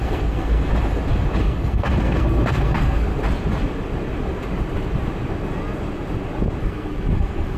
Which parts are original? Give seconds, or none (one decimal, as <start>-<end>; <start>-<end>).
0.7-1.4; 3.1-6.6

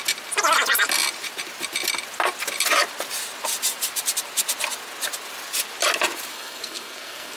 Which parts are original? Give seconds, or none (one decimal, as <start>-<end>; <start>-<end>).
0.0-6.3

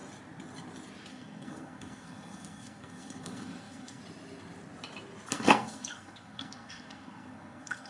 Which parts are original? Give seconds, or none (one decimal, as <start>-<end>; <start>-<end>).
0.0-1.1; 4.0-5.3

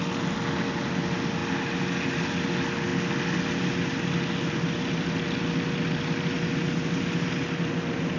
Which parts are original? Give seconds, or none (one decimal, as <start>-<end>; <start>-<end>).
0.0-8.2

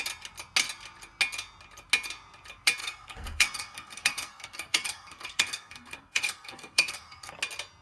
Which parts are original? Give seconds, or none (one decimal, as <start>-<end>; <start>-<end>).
0.0-2.8; 7.3-7.8

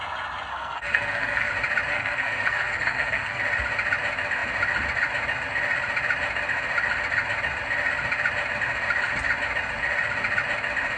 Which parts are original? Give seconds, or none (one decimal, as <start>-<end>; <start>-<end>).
0.0-0.5; 1.5-1.9; 3.4-11.0

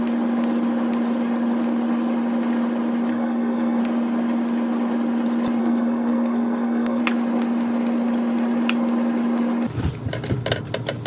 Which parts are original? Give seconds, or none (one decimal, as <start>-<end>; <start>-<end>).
0.0-3.1; 3.8-5.6; 7.0-11.1